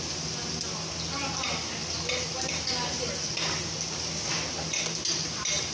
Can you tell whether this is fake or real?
real